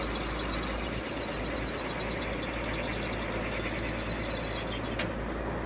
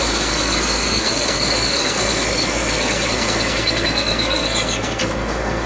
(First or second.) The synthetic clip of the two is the second